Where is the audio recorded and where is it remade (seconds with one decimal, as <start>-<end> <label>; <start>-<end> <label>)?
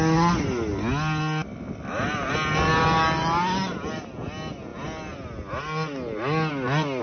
0.0-7.0 recorded